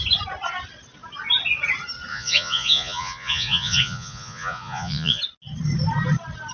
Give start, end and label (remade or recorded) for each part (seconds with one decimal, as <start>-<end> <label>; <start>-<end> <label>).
0.0-2.1 recorded; 2.1-5.2 remade; 5.2-6.5 recorded